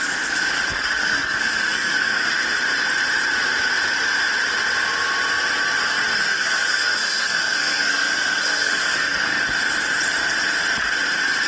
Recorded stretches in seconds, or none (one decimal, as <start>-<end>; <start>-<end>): 0.0-0.7; 2.4-6.3; 9.4-11.5